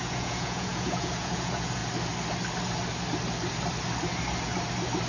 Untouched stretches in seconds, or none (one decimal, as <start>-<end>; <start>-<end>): 1.8-5.1